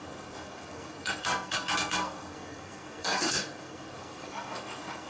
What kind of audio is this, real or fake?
fake